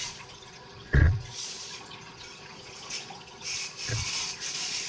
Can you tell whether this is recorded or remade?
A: remade